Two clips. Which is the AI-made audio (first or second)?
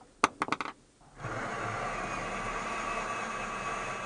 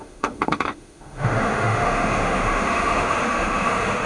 second